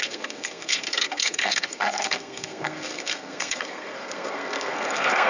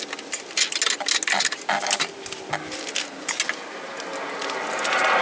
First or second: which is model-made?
first